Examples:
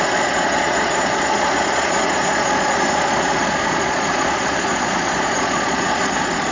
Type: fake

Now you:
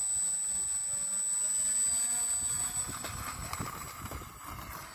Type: real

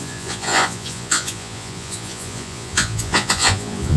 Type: fake